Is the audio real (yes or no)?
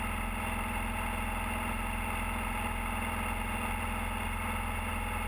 yes